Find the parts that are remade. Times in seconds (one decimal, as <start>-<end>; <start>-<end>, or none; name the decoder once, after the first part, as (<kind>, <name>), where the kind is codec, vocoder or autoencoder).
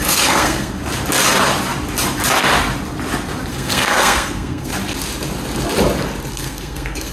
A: 0.0-0.8 (codec, SNAC); 3.5-4.7; 6.3-7.1